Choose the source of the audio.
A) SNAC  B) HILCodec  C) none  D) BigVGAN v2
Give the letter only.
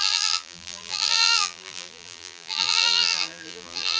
D